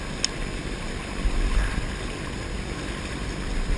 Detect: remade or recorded recorded